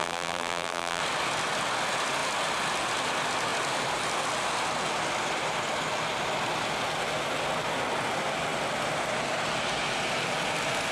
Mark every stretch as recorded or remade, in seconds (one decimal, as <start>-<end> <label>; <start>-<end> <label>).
0.0-1.0 remade; 1.0-10.9 recorded